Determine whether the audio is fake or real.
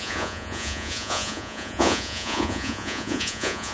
fake